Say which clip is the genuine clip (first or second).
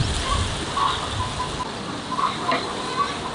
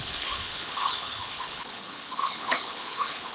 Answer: first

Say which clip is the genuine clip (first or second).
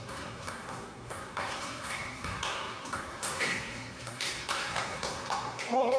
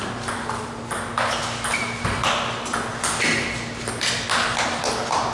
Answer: second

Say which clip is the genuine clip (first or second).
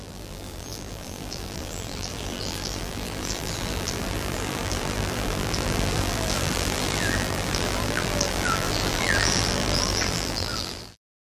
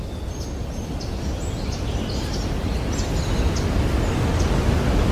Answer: second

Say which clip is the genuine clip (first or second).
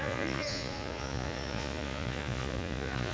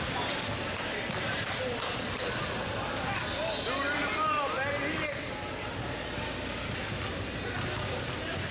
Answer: second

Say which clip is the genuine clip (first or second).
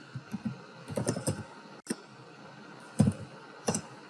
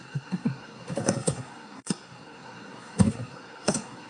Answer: first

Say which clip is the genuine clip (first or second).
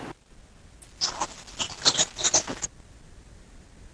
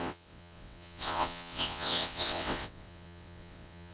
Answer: first